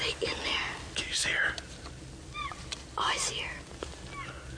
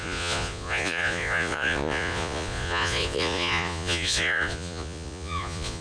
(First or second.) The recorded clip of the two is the first